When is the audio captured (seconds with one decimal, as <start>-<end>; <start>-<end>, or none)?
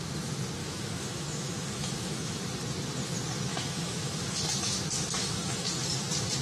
0.0-0.6; 2.4-3.5; 4.4-5.2; 5.7-6.4